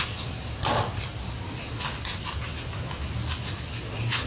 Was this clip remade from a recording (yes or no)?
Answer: no